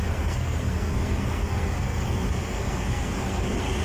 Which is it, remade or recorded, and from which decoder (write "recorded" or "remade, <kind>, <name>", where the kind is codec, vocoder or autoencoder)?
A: remade, codec, SNAC